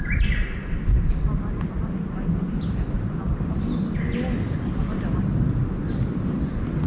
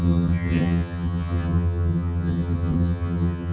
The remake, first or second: second